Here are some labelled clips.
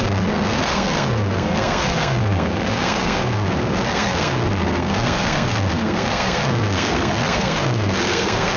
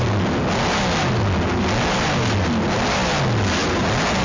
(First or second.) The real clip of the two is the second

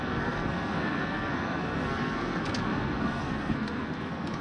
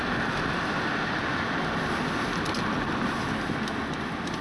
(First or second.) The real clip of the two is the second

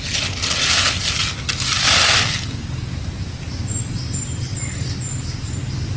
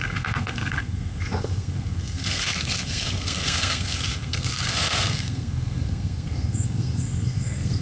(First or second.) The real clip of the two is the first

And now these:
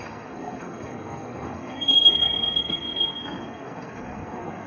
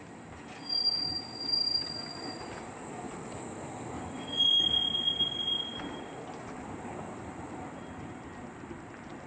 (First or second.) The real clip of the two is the second